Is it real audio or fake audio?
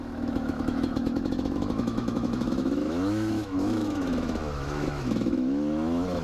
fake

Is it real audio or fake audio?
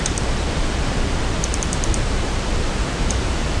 fake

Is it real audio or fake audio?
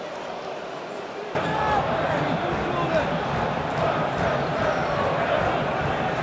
real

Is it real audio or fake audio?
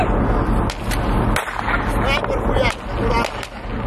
real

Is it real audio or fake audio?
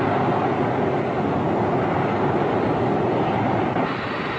real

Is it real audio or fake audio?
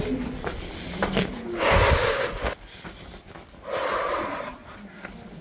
real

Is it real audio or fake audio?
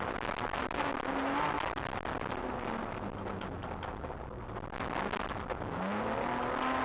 real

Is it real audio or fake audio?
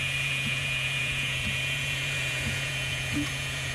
fake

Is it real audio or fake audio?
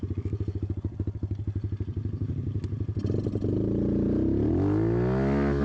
real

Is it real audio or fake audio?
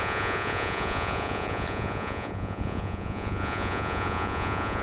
fake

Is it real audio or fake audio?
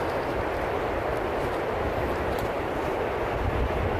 real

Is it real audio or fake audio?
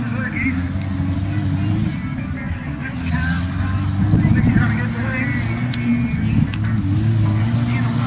real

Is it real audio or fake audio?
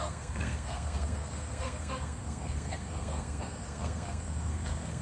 fake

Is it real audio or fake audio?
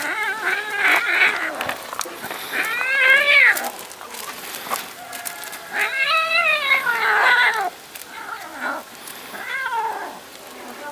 real